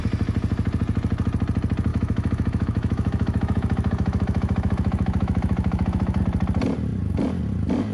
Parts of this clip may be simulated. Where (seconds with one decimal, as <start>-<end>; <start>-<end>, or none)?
1.9-6.2